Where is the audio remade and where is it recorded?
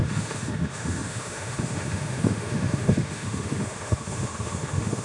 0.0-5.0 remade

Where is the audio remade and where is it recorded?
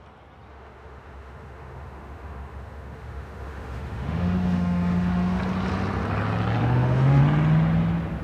0.0-0.5 recorded; 0.5-5.4 remade; 5.4-6.6 recorded; 6.6-7.2 remade; 7.2-8.2 recorded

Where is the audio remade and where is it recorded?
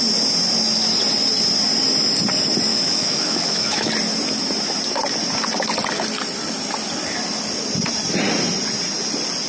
0.0-2.7 recorded; 2.7-3.9 remade; 3.9-9.5 recorded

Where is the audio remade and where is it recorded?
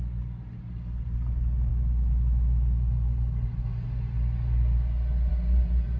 0.0-6.0 recorded